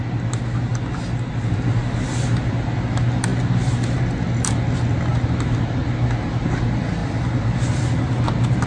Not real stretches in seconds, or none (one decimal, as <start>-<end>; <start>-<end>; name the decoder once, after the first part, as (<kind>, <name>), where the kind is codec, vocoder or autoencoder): 5.1-5.8 (vocoder, BigVGAN v2)